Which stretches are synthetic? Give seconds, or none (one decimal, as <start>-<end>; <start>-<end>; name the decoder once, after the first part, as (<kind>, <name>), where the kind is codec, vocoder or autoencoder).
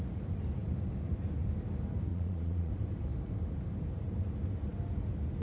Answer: 2.1-2.7 (vocoder, Vocos)